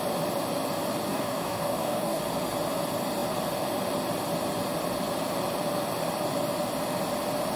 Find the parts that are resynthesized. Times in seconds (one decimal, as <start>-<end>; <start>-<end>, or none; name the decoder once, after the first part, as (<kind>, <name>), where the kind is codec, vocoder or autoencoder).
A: 1.1-2.2 (codec, DAC)